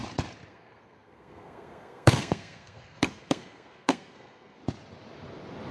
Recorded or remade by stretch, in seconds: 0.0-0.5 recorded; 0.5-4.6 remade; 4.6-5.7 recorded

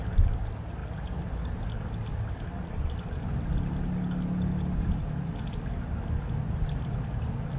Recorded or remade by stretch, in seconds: 0.0-7.6 recorded

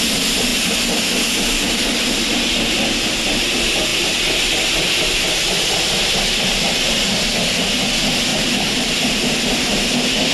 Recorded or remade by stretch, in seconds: 0.0-0.5 recorded; 0.5-2.1 remade; 2.1-8.3 recorded; 8.3-9.2 remade; 9.2-10.3 recorded

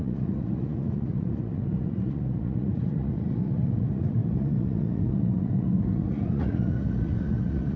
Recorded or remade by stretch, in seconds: 0.0-7.8 remade